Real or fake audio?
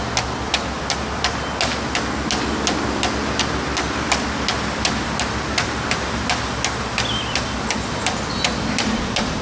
real